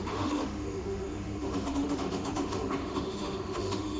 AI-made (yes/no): yes